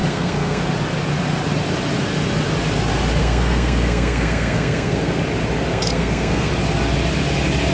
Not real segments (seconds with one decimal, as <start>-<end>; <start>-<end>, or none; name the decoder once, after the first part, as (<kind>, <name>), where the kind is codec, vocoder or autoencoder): 0.0-0.6 (codec, SNAC); 3.2-5.2; 5.7-6.5